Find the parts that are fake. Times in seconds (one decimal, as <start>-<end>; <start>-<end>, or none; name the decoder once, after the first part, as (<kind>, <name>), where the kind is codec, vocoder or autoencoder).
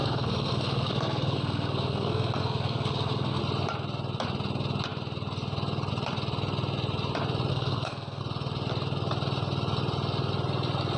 0.0-3.4 (codec, SNAC); 7.5-8.2